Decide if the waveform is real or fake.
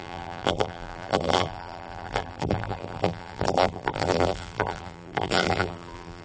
fake